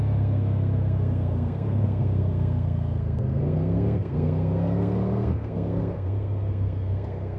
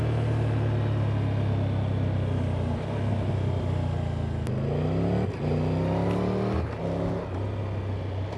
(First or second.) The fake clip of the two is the first